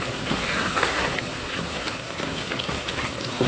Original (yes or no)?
no